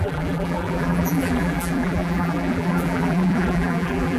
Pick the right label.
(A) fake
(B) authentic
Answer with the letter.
A